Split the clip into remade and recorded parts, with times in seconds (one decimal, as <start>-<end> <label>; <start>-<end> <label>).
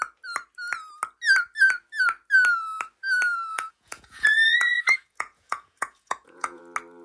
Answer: 0.0-3.5 recorded; 3.5-6.6 remade; 6.6-7.0 recorded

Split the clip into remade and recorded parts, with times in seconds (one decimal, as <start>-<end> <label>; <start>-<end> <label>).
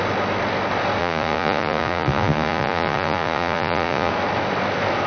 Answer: 0.0-1.0 recorded; 1.0-4.1 remade; 4.1-5.1 recorded